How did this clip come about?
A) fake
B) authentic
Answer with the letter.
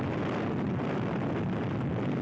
B